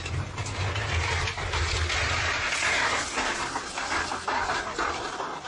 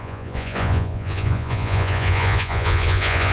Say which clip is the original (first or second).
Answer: first